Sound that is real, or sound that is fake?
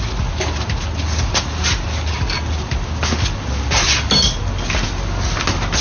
real